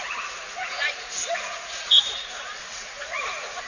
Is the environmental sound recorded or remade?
remade